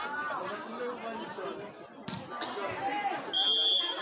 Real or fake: real